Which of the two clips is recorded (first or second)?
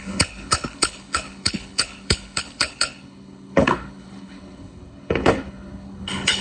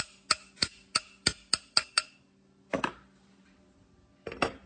second